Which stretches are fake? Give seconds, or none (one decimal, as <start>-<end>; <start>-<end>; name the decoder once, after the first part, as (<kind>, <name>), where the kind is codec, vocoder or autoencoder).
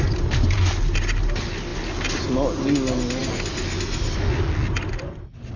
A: none